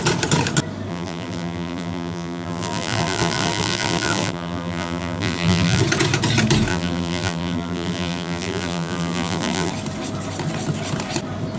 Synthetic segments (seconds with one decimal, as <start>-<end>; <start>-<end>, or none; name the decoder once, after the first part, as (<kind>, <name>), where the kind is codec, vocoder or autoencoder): 0.9-5.8 (vocoder, BigVGAN v2); 6.7-9.7